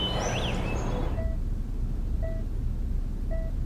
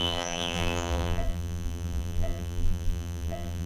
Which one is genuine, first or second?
first